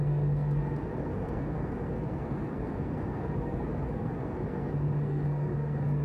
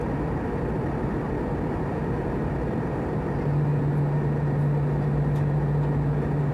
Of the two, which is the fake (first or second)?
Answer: first